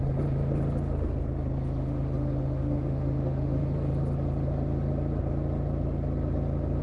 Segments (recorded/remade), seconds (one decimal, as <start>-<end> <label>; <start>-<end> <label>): 0.0-1.8 recorded; 1.8-3.6 remade; 3.6-6.8 recorded